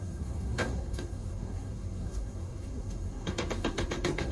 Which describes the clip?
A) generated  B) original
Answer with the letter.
A